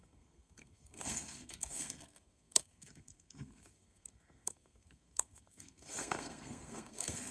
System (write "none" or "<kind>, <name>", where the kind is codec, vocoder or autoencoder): codec, SNAC